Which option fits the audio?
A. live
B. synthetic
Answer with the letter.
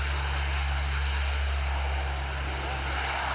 A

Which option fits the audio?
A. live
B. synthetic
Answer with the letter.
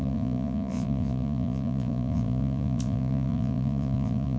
B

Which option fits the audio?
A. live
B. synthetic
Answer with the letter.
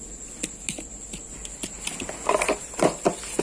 A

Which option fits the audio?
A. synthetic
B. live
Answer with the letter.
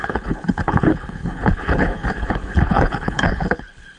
A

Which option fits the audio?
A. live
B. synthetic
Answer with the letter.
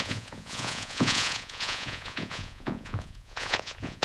B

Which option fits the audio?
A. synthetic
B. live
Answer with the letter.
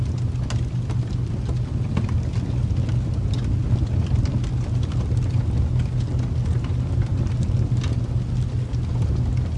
B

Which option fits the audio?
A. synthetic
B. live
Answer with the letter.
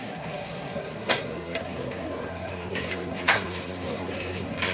A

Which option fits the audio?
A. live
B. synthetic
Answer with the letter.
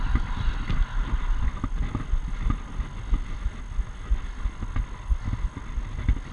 A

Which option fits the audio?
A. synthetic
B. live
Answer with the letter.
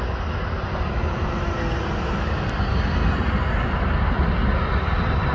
B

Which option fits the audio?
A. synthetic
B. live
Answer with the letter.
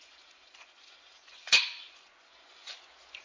A